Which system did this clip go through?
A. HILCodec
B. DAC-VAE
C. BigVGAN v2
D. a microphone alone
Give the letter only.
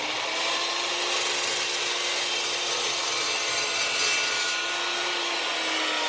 D